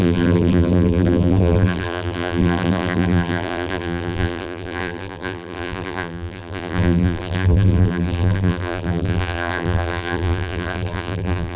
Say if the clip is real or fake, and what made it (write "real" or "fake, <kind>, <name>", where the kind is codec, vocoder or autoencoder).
fake, vocoder, BigVGAN v2